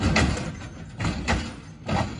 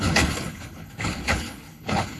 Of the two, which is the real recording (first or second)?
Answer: first